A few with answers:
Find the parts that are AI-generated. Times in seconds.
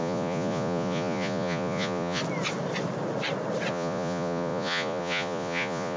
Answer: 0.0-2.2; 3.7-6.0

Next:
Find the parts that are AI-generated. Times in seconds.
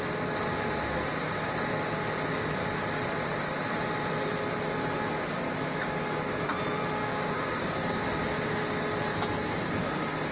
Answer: 7.0-8.0